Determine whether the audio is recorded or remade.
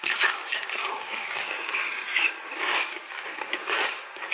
remade